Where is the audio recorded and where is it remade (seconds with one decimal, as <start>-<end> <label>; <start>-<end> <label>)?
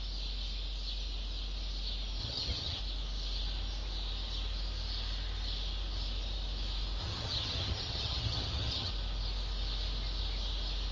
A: 0.0-2.2 recorded; 2.2-2.8 remade; 2.8-7.0 recorded; 7.0-8.9 remade; 8.9-10.9 recorded